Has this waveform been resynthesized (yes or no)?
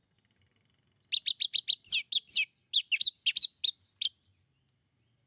no